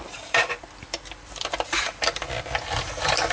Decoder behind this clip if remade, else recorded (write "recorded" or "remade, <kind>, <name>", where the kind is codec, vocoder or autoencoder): remade, vocoder, BigVGAN v2